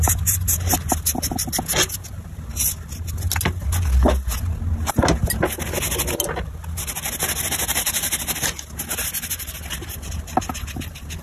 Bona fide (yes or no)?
yes